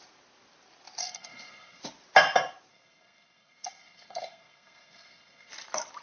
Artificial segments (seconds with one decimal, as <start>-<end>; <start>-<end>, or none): 1.0-1.8; 2.7-5.5